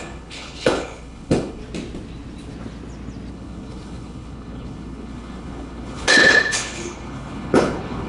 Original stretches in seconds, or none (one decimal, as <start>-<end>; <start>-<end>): 1.6-3.3